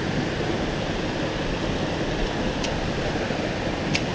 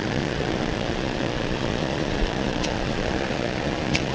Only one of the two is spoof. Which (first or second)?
second